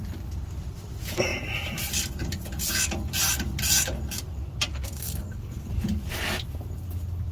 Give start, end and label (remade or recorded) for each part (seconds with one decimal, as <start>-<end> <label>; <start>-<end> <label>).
0.0-4.7 recorded; 4.7-5.7 remade; 5.7-7.3 recorded